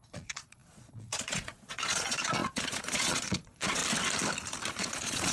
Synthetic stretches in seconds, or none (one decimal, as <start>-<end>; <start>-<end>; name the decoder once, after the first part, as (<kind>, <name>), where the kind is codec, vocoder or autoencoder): 0.0-3.8 (vocoder, Vocos); 4.7-5.3